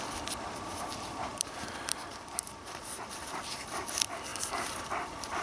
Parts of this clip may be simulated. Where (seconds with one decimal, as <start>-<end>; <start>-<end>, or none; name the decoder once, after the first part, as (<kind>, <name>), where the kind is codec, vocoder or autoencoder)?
0.0-5.4 (vocoder, BigVGAN v2)